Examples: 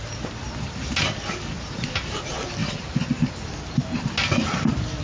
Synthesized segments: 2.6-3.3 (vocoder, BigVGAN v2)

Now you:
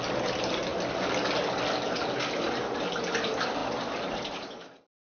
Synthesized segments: none

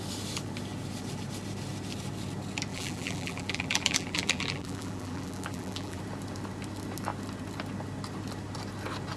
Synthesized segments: 2.7-6.0 (vocoder, BigVGAN v2)

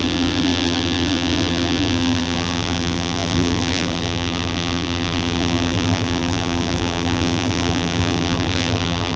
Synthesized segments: 0.0-9.2 (vocoder, BigVGAN v2)

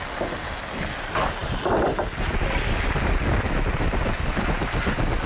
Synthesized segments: none